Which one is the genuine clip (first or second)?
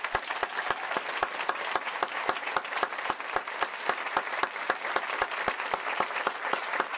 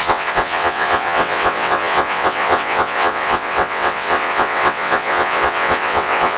first